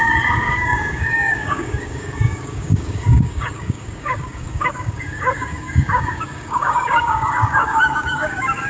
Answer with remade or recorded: remade